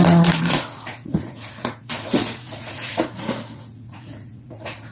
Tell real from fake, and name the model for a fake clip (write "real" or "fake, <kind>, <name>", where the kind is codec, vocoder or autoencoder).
fake, vocoder, Vocos